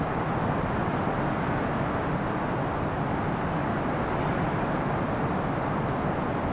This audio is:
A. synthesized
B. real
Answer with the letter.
B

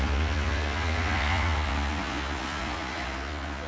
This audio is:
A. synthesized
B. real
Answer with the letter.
A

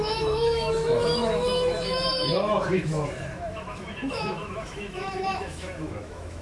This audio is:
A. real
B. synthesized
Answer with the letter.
B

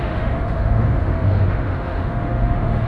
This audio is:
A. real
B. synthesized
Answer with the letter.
B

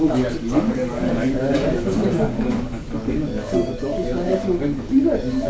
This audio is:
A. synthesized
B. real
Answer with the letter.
A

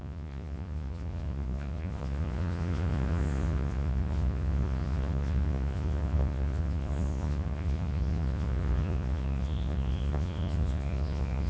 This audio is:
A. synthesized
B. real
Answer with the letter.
A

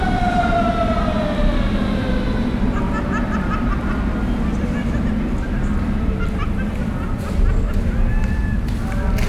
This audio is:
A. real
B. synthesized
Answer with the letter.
A